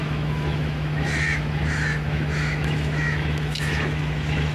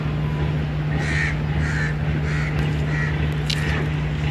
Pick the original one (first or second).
second